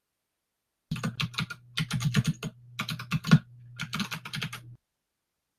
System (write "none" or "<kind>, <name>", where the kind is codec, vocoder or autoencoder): none